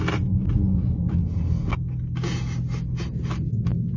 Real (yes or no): yes